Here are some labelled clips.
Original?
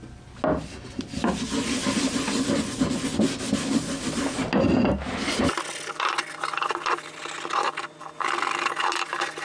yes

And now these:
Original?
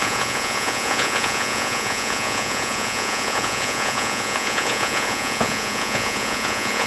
no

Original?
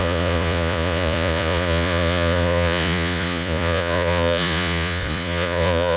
no